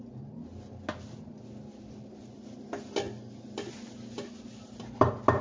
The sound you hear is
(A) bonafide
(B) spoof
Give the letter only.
A